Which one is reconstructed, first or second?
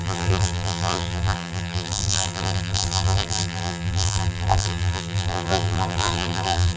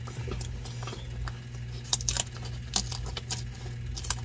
first